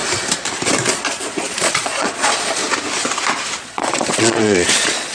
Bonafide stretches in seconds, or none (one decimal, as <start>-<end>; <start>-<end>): 0.0-0.9; 2.6-3.6